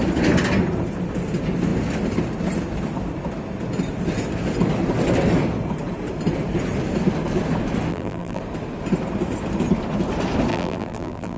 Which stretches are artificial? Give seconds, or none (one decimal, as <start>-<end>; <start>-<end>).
7.9-8.4; 10.5-11.4